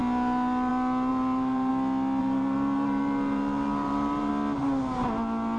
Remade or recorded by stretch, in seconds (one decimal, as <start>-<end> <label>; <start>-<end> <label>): 0.0-1.1 recorded; 1.1-1.7 remade; 1.7-2.2 recorded; 2.2-4.3 remade; 4.3-5.6 recorded